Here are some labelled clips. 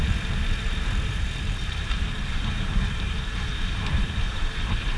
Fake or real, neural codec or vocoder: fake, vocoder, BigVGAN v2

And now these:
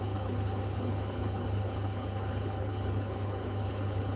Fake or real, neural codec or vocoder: fake, codec, HILCodec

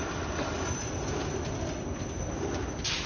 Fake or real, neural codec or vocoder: real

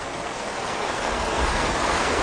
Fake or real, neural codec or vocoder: fake, codec, SNAC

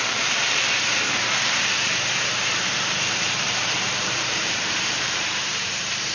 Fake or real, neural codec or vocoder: fake, vocoder, BigVGAN v2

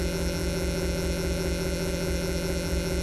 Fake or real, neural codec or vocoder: fake, vocoder, BigVGAN v2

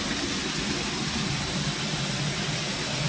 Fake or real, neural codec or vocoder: real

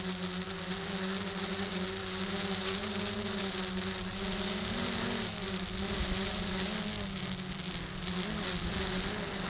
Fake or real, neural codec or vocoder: real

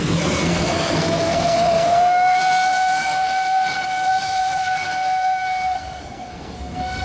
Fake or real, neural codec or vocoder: fake, codec, SNAC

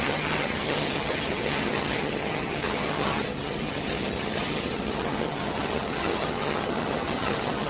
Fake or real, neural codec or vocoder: fake, vocoder, HiFi-GAN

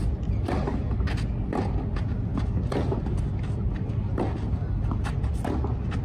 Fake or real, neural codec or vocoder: real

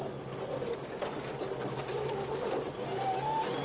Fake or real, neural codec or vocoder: real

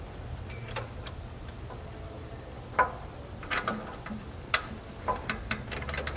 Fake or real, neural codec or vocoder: fake, vocoder, BigVGAN v2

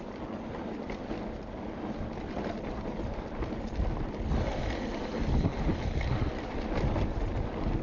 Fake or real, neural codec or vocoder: real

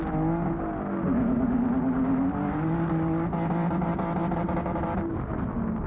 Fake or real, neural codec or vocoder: real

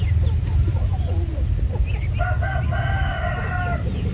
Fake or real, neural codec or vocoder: real